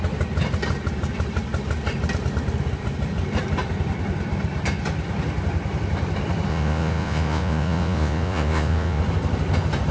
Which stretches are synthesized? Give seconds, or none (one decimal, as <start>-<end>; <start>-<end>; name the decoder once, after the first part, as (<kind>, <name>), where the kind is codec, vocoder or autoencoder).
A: 6.5-9.0 (vocoder, Vocos)